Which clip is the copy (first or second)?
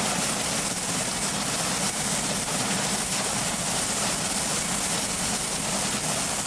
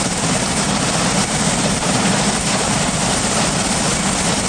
second